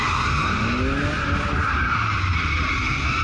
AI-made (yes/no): no